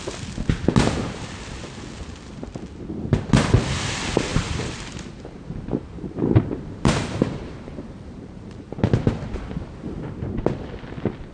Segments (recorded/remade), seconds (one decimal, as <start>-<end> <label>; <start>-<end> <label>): 0.0-4.3 recorded; 4.3-9.1 remade; 9.1-11.3 recorded